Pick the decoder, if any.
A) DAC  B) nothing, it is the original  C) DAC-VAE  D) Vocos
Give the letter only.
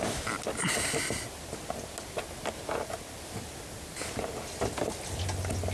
B